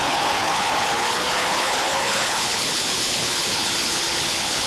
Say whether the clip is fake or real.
fake